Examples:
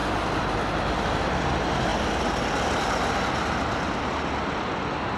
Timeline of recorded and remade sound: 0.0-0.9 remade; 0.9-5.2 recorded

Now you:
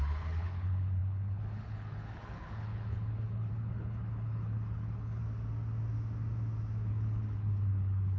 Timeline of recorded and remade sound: 0.0-5.2 remade; 5.2-6.9 recorded; 6.9-8.2 remade

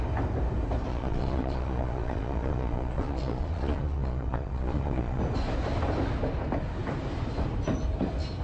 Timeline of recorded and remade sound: 0.0-0.9 recorded; 0.9-5.2 remade; 5.2-8.4 recorded

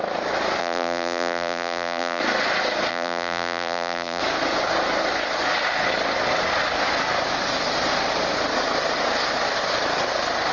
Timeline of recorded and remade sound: 0.0-0.6 recorded; 0.6-2.2 remade; 2.2-2.9 recorded; 2.9-4.2 remade; 4.2-10.5 recorded